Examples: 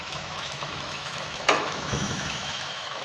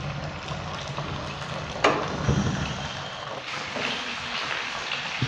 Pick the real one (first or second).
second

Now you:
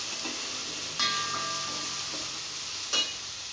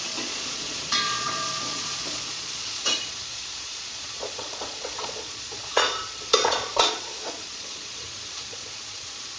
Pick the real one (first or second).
first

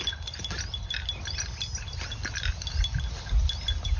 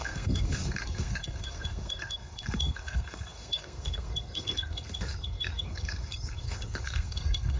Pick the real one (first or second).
first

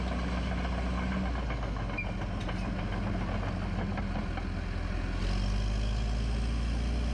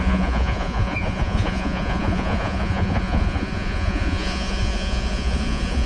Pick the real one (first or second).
first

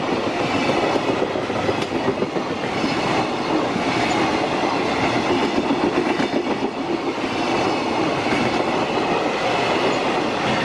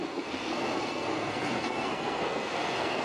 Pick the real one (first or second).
first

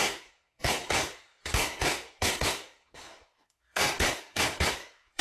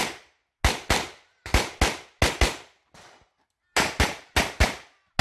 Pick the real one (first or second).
second